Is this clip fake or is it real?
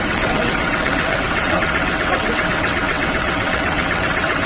fake